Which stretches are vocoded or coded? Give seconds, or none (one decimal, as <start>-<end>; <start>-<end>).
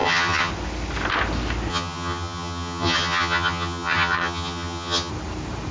0.0-0.5; 1.7-5.1